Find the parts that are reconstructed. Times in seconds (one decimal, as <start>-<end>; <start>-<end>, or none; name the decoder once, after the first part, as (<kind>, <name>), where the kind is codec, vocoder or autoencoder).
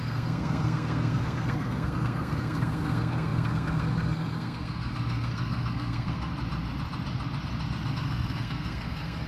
0.0-6.3 (codec, SNAC); 7.9-9.3